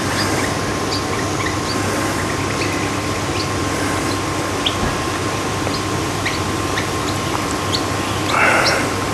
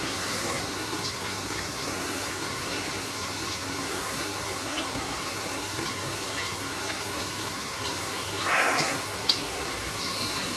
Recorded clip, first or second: first